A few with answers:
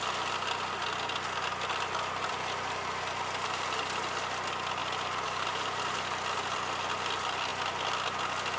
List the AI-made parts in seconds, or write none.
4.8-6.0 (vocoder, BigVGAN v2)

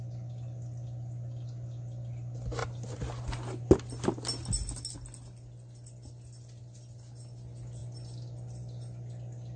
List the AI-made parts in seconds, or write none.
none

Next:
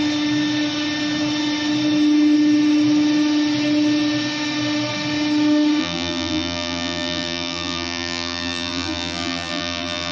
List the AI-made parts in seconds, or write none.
5.8-10.1 (vocoder, BigVGAN v2)